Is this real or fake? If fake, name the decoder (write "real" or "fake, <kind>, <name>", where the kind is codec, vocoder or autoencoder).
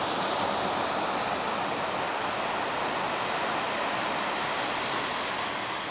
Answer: real